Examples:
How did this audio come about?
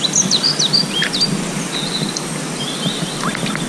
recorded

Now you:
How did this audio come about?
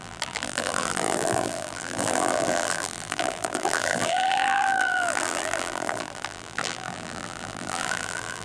remade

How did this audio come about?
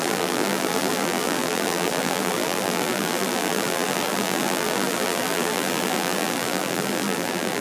remade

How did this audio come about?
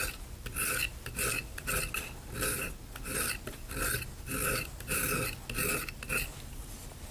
recorded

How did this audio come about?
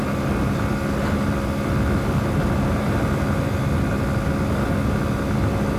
recorded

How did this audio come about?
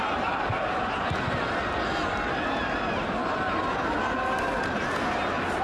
recorded